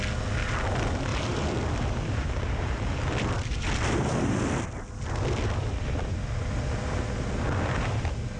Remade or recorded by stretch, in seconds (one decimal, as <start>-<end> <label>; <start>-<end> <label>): 0.0-1.1 recorded; 1.1-4.3 remade; 4.3-8.4 recorded